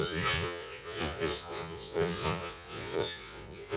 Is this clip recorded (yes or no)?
no